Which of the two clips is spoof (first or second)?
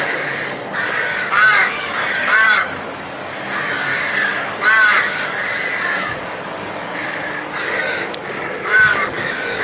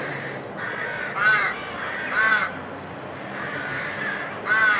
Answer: first